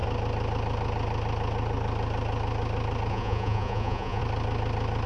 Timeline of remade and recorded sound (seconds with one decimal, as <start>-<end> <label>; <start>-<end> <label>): 0.0-3.1 recorded; 3.1-4.2 remade; 4.2-5.1 recorded